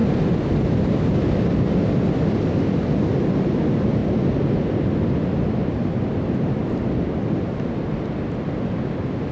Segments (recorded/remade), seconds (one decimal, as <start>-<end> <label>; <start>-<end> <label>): 0.0-9.3 recorded